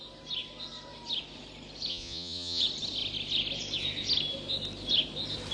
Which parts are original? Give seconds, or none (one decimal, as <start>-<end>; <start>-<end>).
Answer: 0.0-1.9; 2.6-5.5